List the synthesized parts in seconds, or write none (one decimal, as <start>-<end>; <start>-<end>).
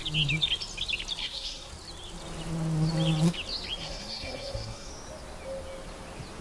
1.2-1.7; 3.8-4.9